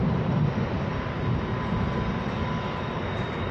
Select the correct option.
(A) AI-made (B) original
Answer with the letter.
B